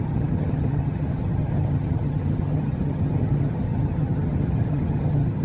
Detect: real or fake fake